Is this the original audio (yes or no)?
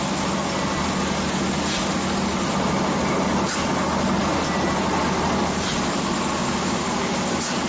yes